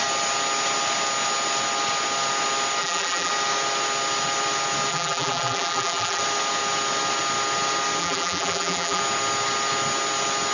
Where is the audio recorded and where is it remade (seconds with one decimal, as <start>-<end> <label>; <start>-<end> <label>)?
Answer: 0.0-2.8 recorded; 2.8-3.3 remade; 3.3-4.9 recorded; 4.9-6.2 remade; 6.2-8.0 recorded; 8.0-9.0 remade; 9.0-10.5 recorded